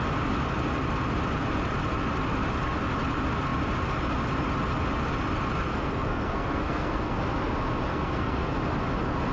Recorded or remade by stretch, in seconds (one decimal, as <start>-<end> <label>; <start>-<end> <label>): 0.0-5.7 recorded; 5.7-7.2 remade; 7.2-7.9 recorded; 7.9-8.5 remade; 8.5-9.3 recorded